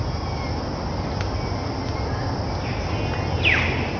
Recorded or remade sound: recorded